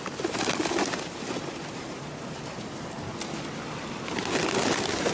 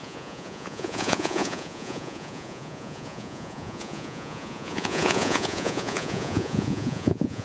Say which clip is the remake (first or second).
second